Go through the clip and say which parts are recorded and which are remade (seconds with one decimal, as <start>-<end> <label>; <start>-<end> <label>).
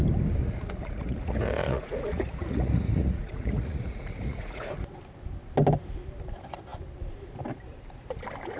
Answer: 0.0-0.4 recorded; 0.4-5.0 remade; 5.0-8.6 recorded